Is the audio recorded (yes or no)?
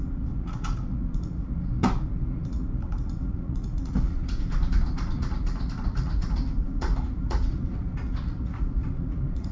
no